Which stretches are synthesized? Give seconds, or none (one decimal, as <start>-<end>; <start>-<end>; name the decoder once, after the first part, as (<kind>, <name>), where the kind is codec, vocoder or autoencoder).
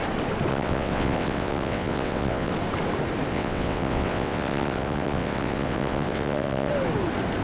0.5-2.5 (vocoder, WaveNeXt); 3.3-6.7